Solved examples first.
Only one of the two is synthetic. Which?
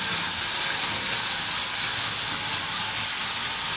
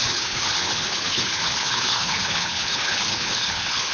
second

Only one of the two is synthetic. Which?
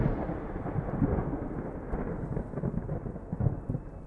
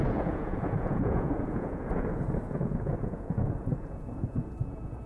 second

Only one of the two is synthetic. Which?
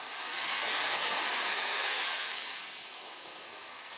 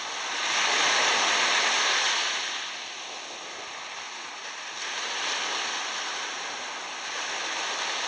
first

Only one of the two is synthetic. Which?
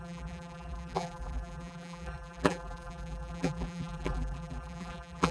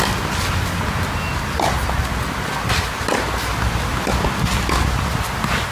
first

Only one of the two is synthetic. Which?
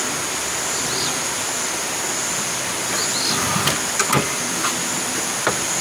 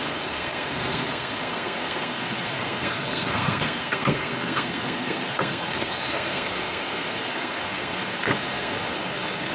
second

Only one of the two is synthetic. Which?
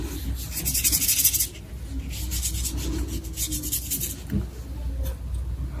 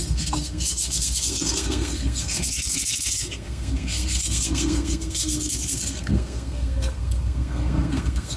second